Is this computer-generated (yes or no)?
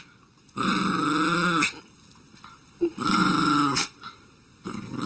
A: no